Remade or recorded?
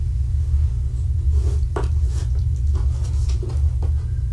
recorded